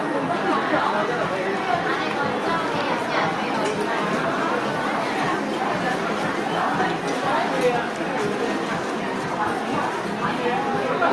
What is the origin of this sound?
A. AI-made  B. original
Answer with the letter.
B